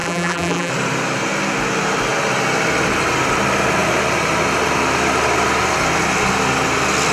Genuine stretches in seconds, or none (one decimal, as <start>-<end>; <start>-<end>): 0.7-7.1